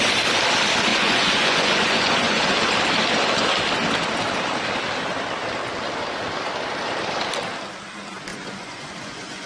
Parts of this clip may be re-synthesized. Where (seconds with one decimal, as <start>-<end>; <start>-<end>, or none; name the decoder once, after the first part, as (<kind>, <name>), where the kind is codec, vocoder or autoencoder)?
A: 0.9-2.7 (vocoder, Vocos); 8.3-9.5